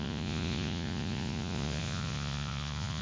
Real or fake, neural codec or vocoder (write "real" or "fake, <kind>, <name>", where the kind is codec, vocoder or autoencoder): fake, vocoder, Vocos